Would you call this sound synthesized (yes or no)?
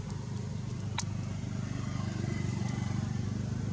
no